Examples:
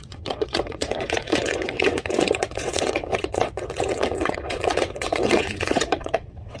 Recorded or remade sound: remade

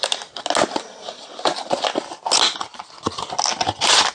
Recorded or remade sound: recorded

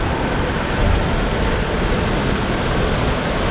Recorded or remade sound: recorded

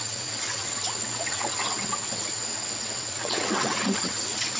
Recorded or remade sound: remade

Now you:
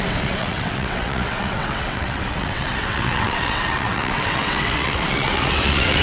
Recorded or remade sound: remade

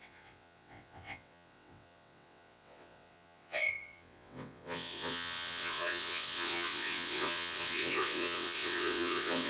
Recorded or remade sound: remade